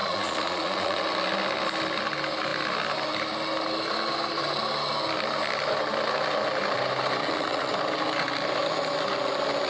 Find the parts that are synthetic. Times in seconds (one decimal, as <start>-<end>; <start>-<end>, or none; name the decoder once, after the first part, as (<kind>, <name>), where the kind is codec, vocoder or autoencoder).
0.0-1.0 (vocoder, Vocos); 7.2-7.7